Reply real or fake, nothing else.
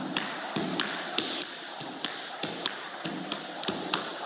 real